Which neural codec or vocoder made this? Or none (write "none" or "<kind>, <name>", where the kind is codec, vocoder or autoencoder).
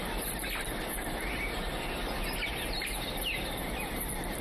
none